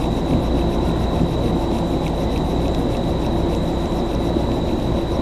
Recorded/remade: recorded